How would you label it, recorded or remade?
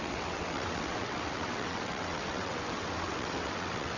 remade